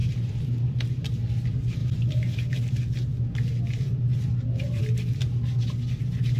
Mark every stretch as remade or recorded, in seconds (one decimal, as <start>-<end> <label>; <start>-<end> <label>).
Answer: 0.0-1.3 remade; 1.3-1.8 recorded; 1.8-2.8 remade; 2.8-4.1 recorded; 4.1-4.8 remade; 4.8-6.4 recorded